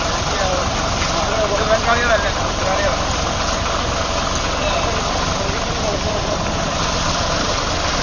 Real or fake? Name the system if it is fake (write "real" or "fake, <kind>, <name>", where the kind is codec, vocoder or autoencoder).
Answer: fake, vocoder, BigVGAN v2